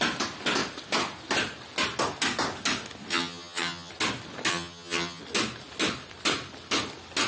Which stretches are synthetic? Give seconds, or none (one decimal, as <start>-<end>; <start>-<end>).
3.1-3.9; 4.5-5.2